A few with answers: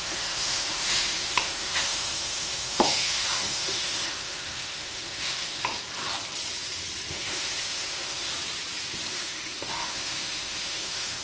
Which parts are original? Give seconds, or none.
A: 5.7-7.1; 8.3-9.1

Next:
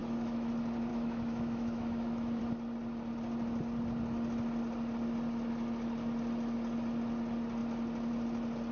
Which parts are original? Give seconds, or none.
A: 0.5-0.9; 2.4-8.7

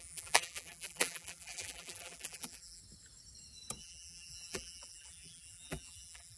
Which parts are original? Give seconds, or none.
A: 2.8-3.8

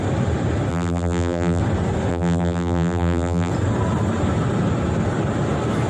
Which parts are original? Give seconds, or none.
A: 0.0-0.7; 1.6-2.1; 3.5-5.9